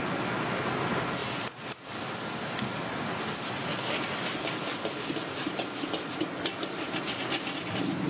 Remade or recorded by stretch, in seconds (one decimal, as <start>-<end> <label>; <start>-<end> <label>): 0.0-8.1 recorded